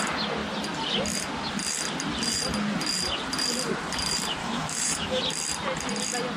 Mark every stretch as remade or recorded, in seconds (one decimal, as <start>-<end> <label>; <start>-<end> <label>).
0.0-4.4 recorded; 4.4-5.2 remade; 5.2-6.4 recorded